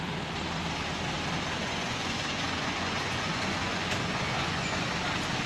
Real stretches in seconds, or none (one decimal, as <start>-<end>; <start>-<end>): 0.0-1.6; 4.9-5.5